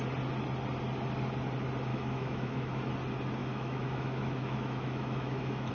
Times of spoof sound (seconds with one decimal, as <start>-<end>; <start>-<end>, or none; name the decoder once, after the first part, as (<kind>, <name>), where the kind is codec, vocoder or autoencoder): 1.9-2.8 (autoencoder, DAC-VAE); 3.4-5.7